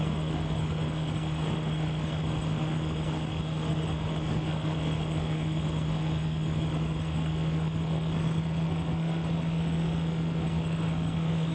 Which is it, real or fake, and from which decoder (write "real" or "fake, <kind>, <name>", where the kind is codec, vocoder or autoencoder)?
fake, codec, SNAC